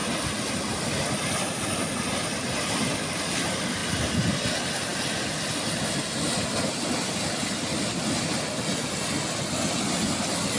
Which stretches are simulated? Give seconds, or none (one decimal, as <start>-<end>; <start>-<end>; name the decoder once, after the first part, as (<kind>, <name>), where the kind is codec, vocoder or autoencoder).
none